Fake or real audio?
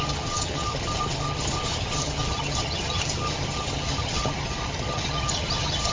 fake